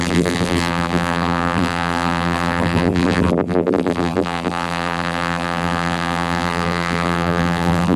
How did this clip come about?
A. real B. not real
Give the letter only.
B